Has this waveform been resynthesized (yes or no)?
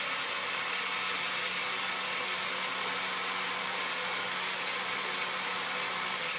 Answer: no